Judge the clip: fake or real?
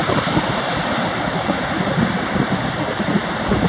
real